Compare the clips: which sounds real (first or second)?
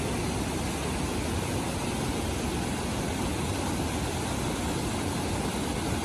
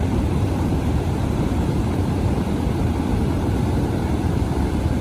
first